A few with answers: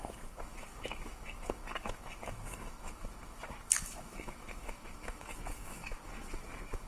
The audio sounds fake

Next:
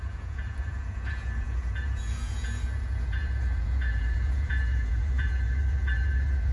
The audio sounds fake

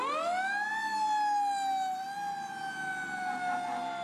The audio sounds real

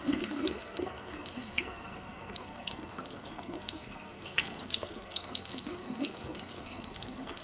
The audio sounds fake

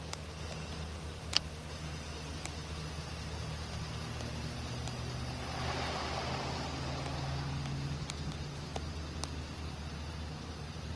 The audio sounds real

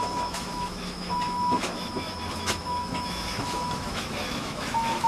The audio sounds fake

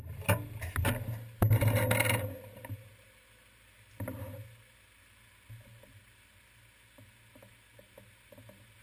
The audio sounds real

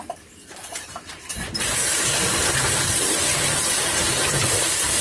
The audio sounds fake